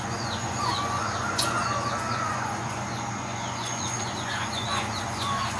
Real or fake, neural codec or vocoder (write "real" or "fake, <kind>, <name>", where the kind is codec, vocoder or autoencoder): fake, vocoder, Vocos